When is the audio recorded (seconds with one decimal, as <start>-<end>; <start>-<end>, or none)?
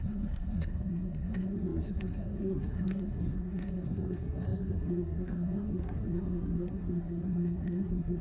none